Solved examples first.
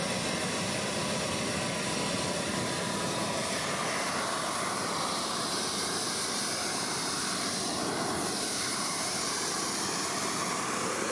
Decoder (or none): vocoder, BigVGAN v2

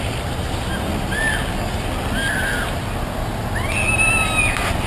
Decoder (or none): none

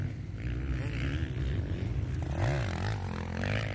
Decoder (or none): none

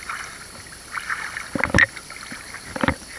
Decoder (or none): none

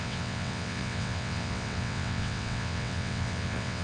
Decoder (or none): vocoder, WaveNeXt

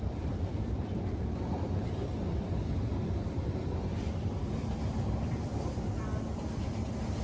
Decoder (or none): vocoder, BigVGAN v2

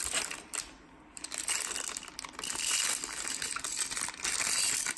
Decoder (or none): none